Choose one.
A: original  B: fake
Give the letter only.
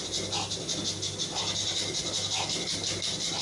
A